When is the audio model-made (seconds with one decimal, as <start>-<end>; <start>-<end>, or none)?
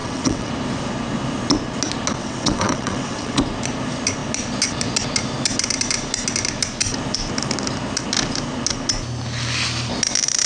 0.0-0.5; 2.2-3.4